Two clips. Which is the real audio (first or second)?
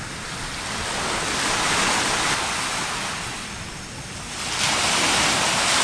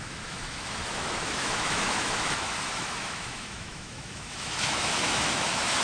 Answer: first